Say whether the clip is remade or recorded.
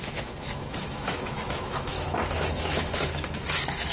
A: remade